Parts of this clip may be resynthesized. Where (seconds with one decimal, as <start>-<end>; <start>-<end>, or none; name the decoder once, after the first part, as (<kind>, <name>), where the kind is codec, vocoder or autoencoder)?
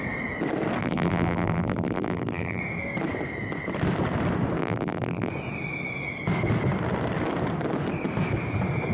0.8-2.6 (vocoder, BigVGAN v2); 4.6-5.3